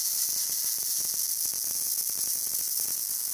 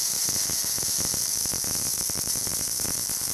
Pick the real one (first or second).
first